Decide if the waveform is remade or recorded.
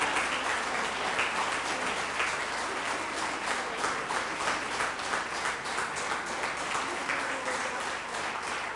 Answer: recorded